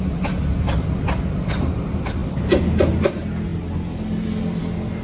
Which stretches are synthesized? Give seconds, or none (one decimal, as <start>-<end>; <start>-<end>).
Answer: none